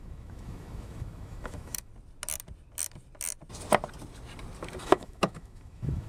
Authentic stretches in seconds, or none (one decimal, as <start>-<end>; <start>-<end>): 1.9-4.8